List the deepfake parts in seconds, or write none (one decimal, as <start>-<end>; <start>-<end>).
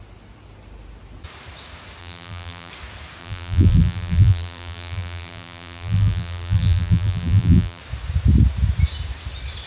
2.0-2.7; 3.2-7.8